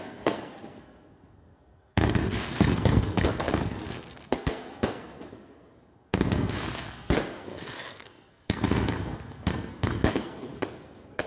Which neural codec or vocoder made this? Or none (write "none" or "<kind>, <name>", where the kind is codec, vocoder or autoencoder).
codec, SNAC